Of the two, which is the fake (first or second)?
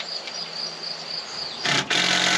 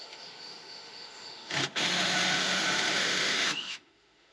second